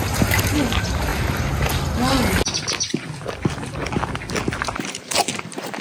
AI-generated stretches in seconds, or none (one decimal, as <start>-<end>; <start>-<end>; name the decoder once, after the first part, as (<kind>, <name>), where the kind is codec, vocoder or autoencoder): 0.0-1.1 (vocoder, BigVGAN v2); 4.6-5.8

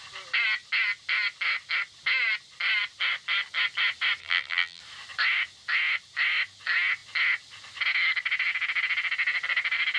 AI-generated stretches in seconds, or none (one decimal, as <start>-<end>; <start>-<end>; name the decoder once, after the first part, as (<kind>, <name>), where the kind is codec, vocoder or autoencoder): 4.2-4.8 (vocoder, BigVGAN v2)

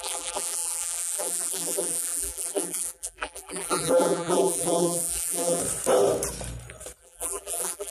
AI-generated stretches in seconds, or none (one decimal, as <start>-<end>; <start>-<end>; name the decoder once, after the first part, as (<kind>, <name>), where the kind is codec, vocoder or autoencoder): 0.0-5.6 (vocoder, BigVGAN v2); 7.0-7.9

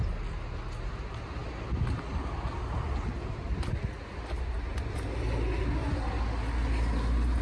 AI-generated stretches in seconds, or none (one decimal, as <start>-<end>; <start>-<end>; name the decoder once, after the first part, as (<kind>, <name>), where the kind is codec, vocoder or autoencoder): none

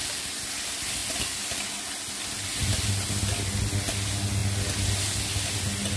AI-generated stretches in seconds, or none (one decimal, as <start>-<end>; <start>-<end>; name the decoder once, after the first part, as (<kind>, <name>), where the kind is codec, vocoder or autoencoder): 0.0-0.5 (vocoder, BigVGAN v2); 1.0-1.8; 2.6-3.2

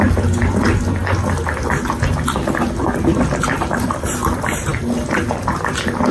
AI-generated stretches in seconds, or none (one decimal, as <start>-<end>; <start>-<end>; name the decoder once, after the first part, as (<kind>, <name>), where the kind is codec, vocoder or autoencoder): none